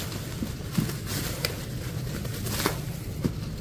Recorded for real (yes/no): yes